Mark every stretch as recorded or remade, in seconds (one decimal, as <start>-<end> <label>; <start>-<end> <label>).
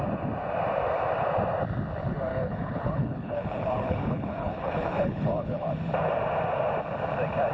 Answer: 0.0-2.3 recorded; 2.3-5.7 remade; 5.7-7.5 recorded